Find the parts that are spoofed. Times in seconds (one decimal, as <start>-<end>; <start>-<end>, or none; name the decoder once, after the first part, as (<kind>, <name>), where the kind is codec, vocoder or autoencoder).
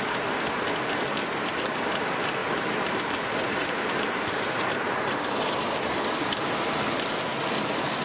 2.4-5.2 (vocoder, BigVGAN v2)